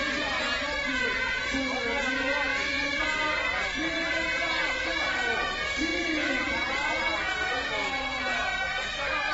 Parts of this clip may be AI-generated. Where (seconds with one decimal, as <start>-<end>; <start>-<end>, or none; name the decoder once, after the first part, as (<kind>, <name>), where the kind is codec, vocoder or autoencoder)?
none